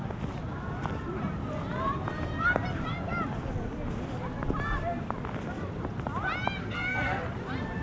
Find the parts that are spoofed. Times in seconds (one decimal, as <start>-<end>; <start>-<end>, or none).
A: 6.6-7.2